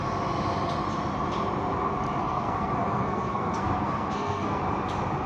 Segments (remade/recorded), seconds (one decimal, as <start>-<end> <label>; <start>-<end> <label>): 0.0-2.2 recorded; 2.2-4.6 remade; 4.6-5.3 recorded